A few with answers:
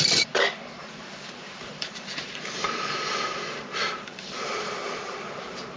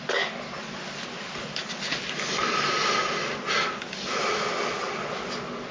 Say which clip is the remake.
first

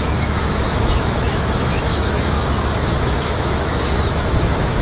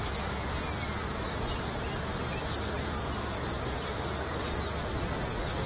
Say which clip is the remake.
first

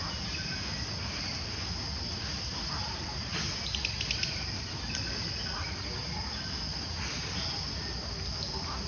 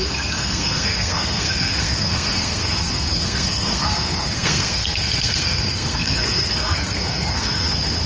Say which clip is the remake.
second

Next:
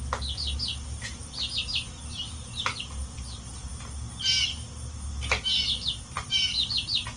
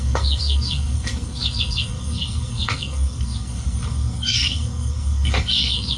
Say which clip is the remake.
second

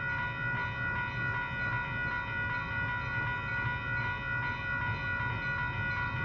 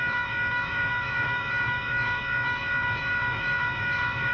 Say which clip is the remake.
second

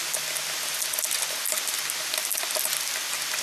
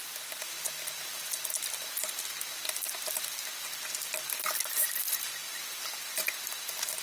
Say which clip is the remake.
second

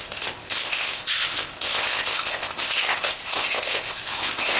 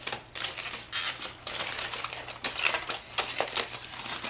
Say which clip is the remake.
first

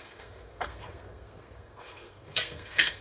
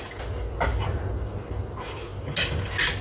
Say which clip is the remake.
first